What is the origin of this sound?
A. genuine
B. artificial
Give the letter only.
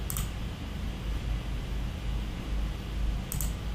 A